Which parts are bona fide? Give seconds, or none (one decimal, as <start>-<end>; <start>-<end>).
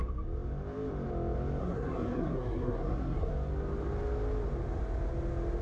0.0-1.6; 3.3-5.6